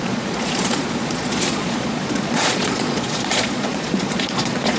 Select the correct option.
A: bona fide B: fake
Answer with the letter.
B